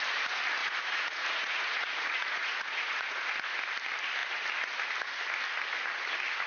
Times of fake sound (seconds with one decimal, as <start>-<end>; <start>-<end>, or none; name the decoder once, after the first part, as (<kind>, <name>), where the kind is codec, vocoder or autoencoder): 0.6-3.6 (vocoder, Vocos)